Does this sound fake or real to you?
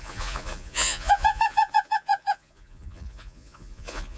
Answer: fake